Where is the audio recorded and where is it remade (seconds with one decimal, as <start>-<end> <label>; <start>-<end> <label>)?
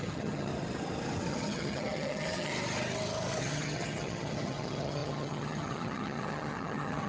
0.0-0.5 remade; 0.5-1.3 recorded; 1.3-2.5 remade; 2.5-3.4 recorded; 3.4-7.1 remade